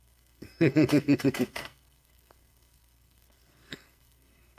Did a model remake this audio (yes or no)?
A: yes